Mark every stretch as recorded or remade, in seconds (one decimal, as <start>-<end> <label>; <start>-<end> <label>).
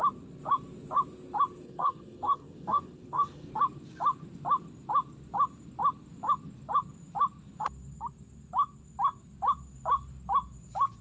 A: 0.0-1.6 recorded; 1.6-3.5 remade; 3.5-11.0 recorded